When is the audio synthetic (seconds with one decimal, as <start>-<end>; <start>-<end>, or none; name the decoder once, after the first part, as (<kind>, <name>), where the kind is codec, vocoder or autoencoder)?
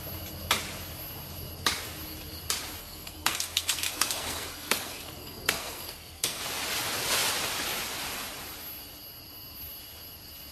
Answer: 2.8-6.4 (codec, SNAC)